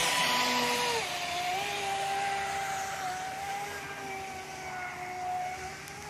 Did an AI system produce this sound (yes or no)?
no